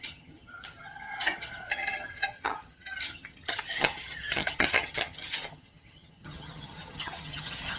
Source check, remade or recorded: remade